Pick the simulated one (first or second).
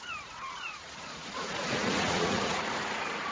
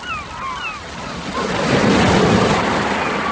first